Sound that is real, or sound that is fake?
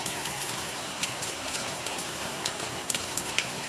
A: fake